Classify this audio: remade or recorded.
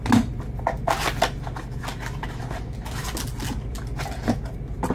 recorded